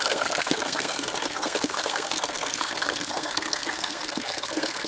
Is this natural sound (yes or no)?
no